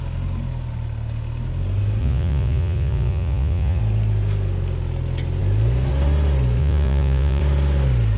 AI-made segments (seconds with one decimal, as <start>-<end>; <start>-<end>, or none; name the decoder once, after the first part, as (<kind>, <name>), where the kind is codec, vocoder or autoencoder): 2.0-3.8 (vocoder, Vocos); 6.6-7.4